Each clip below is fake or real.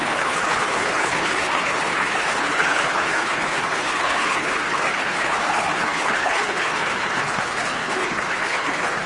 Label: fake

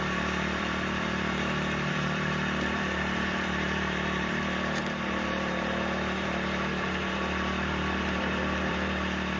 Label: fake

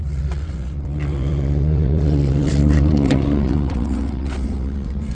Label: fake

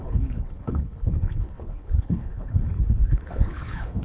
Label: fake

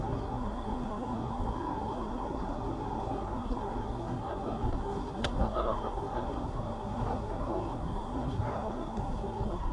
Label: fake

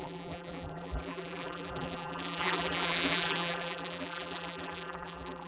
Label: fake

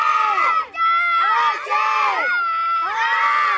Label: real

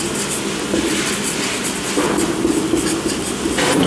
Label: real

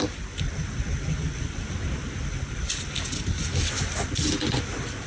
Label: real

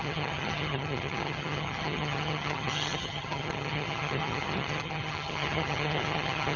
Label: fake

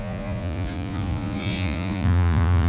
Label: fake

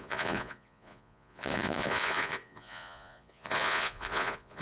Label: fake